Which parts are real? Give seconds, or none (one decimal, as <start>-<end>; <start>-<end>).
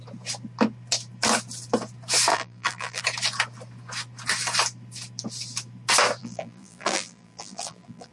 0.0-2.3; 3.0-6.2